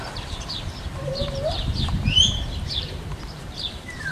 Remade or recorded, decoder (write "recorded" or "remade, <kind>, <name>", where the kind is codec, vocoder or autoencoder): remade, vocoder, BigVGAN v2